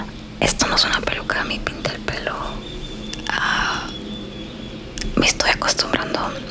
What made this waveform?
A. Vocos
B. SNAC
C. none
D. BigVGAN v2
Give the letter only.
C